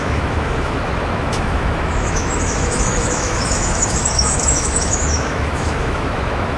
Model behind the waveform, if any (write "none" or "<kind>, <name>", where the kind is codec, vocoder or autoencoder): autoencoder, DAC-VAE